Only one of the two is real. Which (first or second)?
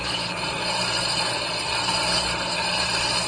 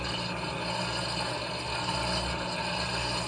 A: second